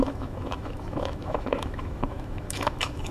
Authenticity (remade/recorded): remade